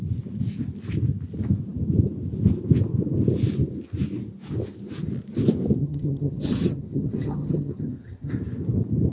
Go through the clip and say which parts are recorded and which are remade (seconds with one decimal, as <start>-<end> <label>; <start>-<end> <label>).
0.0-5.8 recorded; 5.8-8.3 remade; 8.3-9.1 recorded

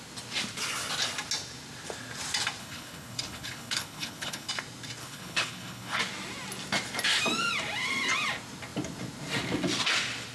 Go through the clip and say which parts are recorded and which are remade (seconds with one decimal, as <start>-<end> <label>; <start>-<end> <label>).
0.0-2.6 recorded; 2.6-4.5 remade; 4.5-5.0 recorded; 5.0-6.0 remade; 6.0-10.3 recorded

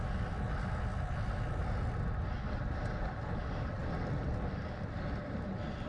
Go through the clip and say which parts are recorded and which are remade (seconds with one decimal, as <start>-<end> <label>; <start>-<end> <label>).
0.0-5.9 recorded